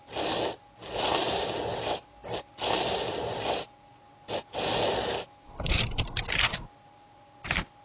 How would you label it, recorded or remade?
recorded